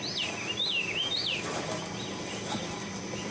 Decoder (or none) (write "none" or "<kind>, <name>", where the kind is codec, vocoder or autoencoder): none